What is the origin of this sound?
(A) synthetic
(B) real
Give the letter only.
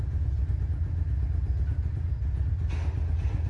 B